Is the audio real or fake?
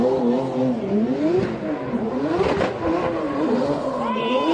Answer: real